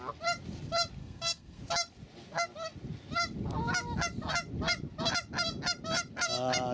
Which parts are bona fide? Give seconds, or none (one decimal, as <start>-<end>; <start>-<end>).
0.0-1.0; 1.6-6.7